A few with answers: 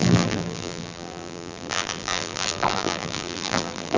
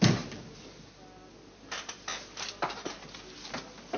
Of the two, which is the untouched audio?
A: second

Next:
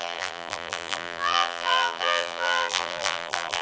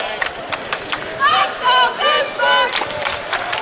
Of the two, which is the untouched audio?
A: second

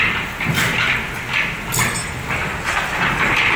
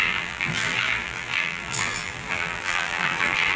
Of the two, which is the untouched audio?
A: first